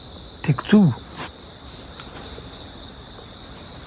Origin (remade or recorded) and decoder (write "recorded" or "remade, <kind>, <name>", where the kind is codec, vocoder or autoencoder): recorded